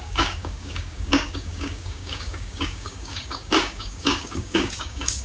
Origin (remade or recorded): remade